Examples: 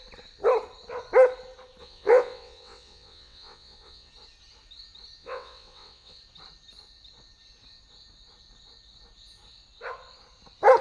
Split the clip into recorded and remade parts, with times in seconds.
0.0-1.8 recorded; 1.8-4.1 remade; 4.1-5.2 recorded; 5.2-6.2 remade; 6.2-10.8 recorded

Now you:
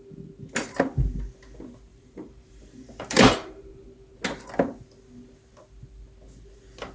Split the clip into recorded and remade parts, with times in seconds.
0.0-1.9 recorded; 1.9-3.6 remade; 3.6-6.9 recorded

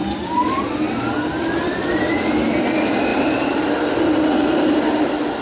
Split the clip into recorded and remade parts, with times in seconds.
0.0-5.4 recorded